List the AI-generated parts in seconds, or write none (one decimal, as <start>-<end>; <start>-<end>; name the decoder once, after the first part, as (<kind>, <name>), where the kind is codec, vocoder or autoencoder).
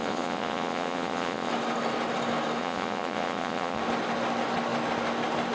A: 0.0-1.5 (vocoder, Vocos); 2.6-3.8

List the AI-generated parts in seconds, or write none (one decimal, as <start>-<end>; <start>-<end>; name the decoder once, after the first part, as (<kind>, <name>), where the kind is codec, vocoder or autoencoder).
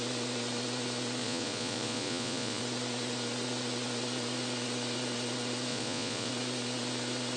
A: 1.2-2.6 (vocoder, Vocos); 5.7-6.3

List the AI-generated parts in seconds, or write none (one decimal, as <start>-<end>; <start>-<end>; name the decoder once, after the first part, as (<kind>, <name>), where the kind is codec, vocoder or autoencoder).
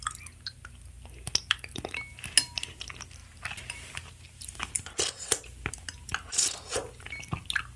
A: none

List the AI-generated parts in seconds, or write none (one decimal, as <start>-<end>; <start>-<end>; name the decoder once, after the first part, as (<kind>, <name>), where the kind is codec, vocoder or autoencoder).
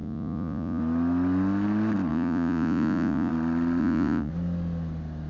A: 0.0-0.8 (vocoder, Vocos); 2.1-3.3; 3.8-4.3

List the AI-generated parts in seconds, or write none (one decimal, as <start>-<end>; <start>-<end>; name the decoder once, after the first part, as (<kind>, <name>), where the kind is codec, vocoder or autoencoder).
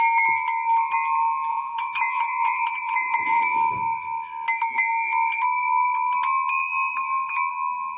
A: 1.5-3.4 (vocoder, Vocos)